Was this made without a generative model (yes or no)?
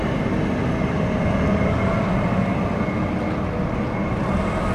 yes